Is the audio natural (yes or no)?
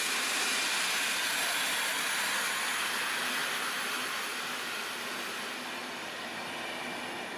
yes